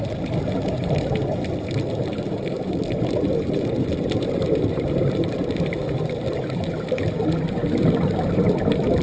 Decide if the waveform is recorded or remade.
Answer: recorded